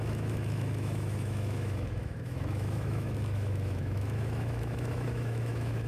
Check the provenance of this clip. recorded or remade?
remade